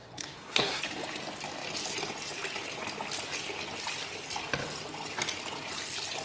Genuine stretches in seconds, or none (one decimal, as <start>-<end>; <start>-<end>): 0.8-6.2